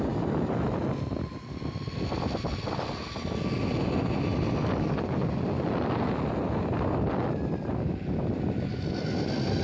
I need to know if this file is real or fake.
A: real